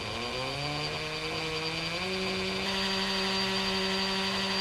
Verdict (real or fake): real